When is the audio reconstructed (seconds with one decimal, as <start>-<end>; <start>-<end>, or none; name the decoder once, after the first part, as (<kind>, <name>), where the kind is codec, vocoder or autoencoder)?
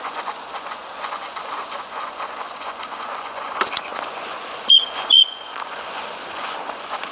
0.0-7.1 (vocoder, Vocos)